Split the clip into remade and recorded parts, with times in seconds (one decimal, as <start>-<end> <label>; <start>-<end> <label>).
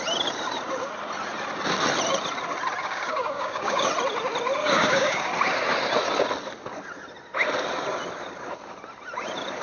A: 0.0-2.8 recorded; 2.8-3.9 remade; 3.9-4.6 recorded; 4.6-5.3 remade; 5.3-9.6 recorded